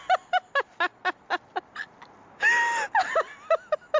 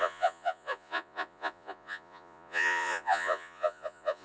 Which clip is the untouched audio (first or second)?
first